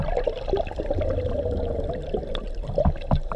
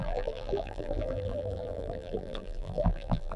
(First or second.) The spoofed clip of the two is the second